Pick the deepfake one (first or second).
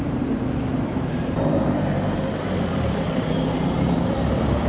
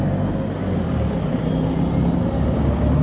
first